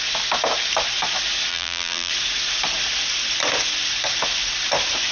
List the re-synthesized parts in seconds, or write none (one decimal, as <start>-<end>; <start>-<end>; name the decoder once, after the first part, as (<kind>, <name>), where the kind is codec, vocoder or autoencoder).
1.5-2.1 (vocoder, BigVGAN v2)